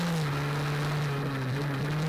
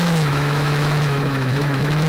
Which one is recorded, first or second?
first